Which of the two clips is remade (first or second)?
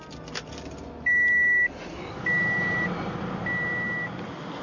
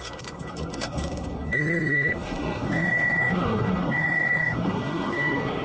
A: second